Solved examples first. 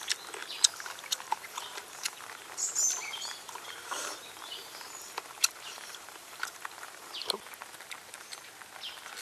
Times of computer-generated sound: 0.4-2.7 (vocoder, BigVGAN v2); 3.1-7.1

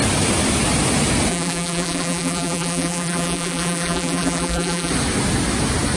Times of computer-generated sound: 1.3-4.9 (vocoder, BigVGAN v2)